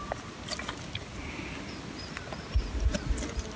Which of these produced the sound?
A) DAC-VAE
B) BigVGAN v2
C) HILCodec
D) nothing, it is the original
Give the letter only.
D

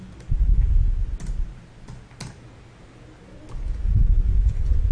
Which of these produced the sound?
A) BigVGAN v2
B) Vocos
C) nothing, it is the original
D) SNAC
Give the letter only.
C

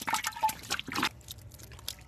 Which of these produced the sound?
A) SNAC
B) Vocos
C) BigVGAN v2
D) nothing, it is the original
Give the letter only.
D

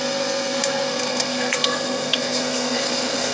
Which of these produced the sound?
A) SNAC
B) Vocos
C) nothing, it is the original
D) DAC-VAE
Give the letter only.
A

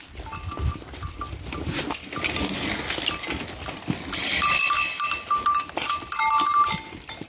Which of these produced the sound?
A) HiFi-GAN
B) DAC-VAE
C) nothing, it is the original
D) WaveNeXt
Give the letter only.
C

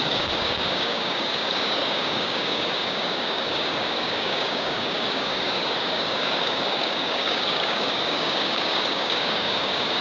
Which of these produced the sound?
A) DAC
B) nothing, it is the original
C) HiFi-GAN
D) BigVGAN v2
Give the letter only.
A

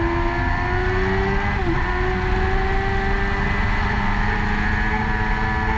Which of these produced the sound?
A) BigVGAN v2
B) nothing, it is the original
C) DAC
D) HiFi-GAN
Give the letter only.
B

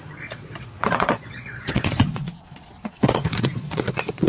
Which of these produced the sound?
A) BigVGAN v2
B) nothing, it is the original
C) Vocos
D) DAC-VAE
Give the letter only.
C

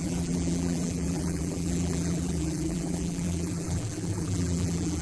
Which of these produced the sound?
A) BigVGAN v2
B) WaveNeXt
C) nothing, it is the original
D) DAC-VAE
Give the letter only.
A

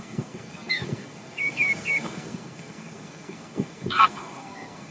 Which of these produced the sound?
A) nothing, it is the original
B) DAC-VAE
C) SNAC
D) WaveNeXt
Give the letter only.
C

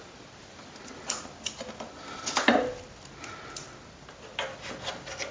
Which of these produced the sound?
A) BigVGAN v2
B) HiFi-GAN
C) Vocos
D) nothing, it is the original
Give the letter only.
D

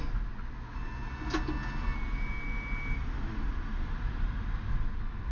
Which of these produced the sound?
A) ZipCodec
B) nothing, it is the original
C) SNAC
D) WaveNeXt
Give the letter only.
B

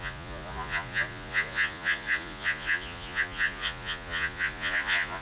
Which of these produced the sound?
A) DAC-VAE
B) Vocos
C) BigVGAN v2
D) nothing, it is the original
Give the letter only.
B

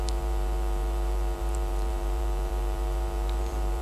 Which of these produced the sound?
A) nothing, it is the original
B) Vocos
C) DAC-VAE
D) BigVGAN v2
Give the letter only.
D